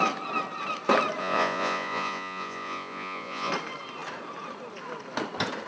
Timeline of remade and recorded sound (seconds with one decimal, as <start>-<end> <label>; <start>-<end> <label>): 0.0-1.2 recorded; 1.2-3.5 remade; 3.5-5.7 recorded